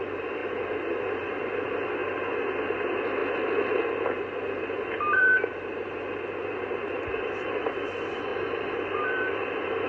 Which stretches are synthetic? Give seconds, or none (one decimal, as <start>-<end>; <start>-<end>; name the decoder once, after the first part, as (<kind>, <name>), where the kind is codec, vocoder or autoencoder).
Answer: 0.0-2.0 (vocoder, BigVGAN v2); 2.6-3.2; 3.9-8.3; 9.0-9.9